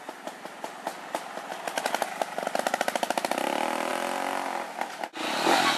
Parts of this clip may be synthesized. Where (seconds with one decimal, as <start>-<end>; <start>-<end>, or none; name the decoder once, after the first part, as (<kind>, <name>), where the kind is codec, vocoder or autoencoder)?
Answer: none